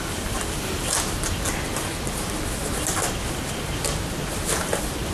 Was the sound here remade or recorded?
recorded